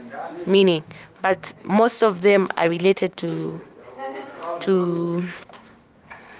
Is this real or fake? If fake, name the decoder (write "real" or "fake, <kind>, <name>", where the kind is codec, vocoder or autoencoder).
fake, codec, DAC